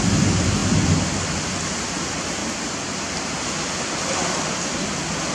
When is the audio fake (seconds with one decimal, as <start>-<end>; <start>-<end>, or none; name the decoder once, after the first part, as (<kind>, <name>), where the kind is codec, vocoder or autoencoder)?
none